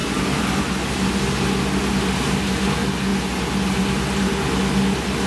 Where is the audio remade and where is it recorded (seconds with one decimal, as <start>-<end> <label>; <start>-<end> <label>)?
0.0-0.6 remade; 0.6-5.3 recorded